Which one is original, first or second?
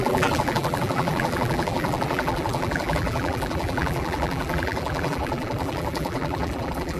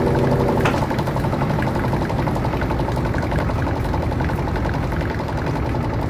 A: second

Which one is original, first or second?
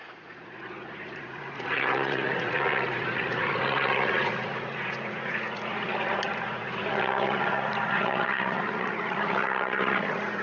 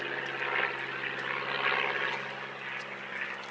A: second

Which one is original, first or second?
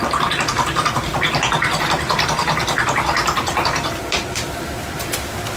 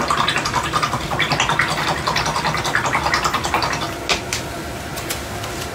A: second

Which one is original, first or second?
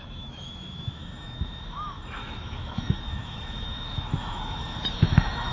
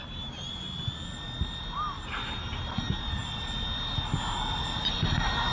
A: second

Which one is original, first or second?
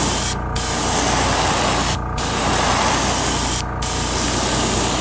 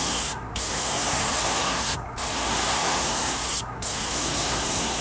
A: first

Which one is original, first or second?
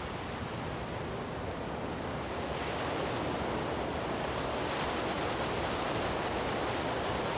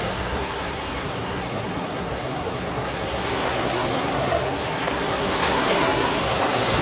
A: first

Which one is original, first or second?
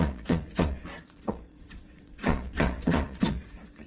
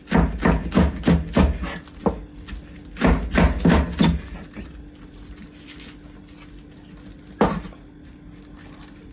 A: second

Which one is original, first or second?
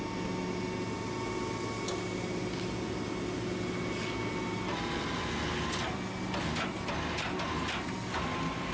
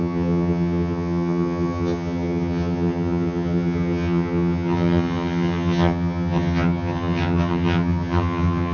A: first